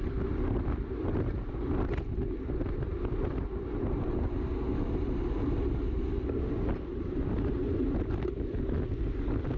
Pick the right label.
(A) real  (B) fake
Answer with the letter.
A